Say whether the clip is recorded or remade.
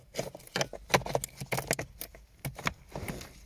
recorded